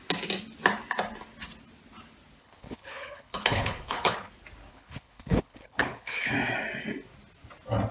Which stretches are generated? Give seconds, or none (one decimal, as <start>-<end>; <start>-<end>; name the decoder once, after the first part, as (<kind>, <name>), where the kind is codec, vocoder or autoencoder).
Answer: 2.4-4.3 (codec, HILCodec); 4.7-6.3